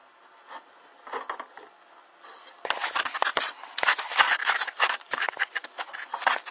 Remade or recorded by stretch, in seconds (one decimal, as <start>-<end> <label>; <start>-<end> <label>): 0.0-4.4 recorded; 4.4-5.9 remade; 5.9-6.5 recorded